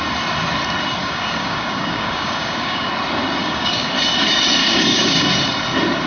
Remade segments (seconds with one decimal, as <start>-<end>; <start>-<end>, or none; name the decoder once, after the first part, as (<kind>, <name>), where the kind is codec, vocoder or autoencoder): 1.0-2.9 (codec, DAC); 3.4-3.9; 4.6-5.2